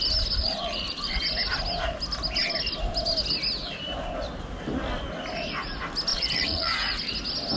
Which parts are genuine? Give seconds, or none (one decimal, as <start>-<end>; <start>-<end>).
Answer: 0.0-0.4; 1.2-6.1; 7.1-7.6